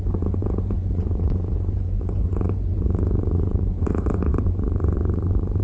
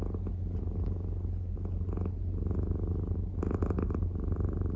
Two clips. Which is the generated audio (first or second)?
first